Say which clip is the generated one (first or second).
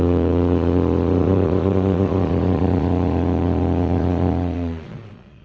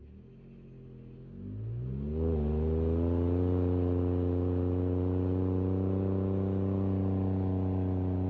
first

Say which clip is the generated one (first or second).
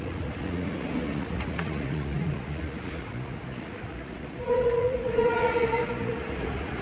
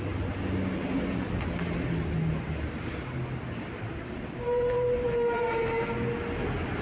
first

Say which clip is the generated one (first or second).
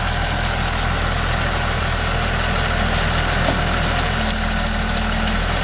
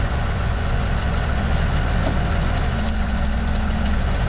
second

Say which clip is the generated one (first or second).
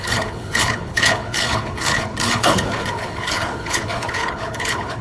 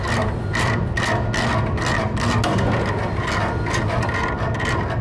first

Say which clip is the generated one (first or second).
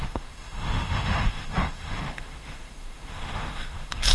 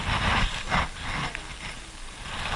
first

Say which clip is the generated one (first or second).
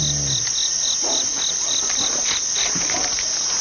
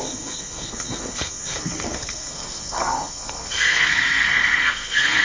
second